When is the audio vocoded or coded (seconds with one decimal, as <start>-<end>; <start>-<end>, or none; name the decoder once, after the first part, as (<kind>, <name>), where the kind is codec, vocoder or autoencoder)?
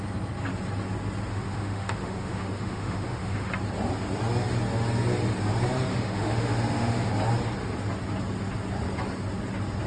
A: 1.3-3.5 (autoencoder, DAC-VAE); 5.9-7.1